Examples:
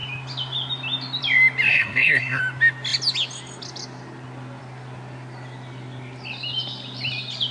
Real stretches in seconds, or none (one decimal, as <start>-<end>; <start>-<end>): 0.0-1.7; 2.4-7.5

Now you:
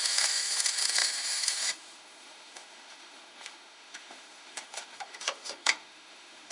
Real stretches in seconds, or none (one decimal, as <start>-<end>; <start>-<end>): none

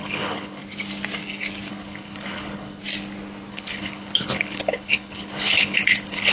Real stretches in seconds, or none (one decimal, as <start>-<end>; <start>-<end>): 0.6-1.7; 2.8-3.5